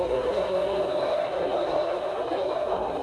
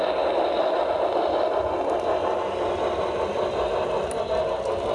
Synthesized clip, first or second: first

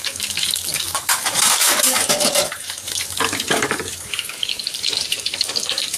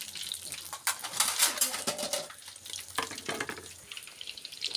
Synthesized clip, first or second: first